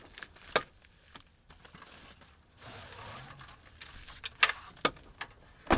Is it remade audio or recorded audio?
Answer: recorded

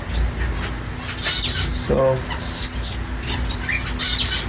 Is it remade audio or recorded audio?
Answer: recorded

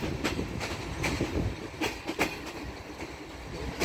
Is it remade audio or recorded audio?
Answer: recorded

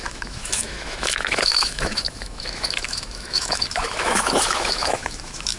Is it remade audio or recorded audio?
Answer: remade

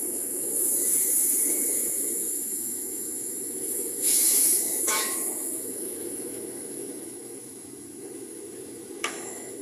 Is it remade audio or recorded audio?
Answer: remade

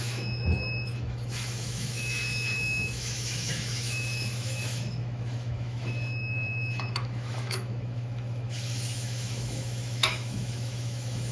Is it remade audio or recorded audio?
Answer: remade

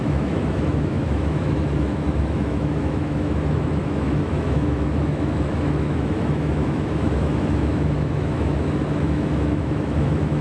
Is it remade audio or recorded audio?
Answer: remade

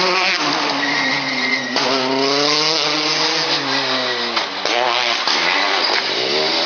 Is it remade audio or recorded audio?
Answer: recorded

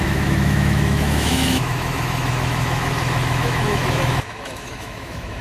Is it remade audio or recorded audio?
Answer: remade